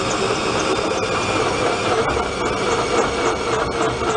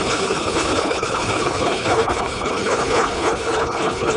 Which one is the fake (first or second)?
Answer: second